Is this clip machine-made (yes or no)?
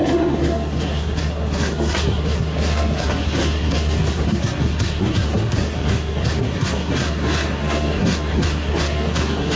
yes